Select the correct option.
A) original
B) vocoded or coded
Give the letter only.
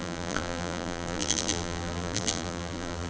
B